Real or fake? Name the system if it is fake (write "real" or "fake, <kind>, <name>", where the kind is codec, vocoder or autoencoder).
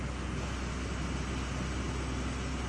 real